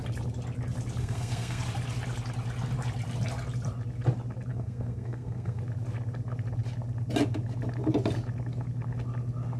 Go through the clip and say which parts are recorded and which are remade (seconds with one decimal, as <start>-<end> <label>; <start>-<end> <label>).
0.0-1.0 recorded; 1.0-1.6 remade; 1.6-4.5 recorded; 4.5-5.6 remade; 5.6-9.6 recorded